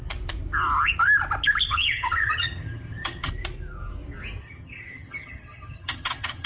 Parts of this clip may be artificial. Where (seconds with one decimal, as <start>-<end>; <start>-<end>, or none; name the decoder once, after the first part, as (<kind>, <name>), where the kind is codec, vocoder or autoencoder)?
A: 1.7-3.3 (vocoder, HiFi-GAN); 4.4-6.5